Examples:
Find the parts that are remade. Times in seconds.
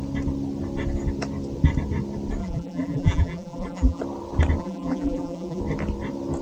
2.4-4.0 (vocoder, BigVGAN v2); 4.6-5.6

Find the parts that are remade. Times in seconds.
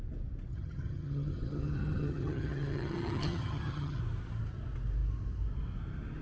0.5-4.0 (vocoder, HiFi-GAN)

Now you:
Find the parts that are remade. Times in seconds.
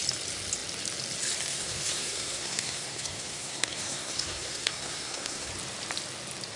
1.5-5.5 (codec, SNAC)